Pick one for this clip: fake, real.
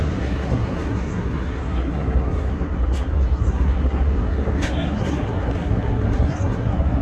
fake